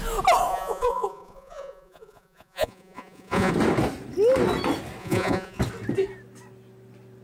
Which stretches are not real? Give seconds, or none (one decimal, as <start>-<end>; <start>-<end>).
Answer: 0.5-3.5; 5.0-5.6